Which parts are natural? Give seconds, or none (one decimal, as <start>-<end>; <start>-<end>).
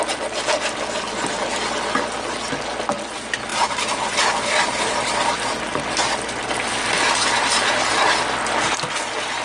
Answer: 0.0-3.5; 6.5-9.4